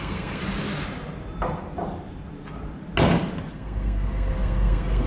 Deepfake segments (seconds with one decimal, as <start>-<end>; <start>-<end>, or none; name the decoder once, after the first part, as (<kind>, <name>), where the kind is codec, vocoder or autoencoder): 0.0-0.4 (codec, SNAC); 3.5-5.1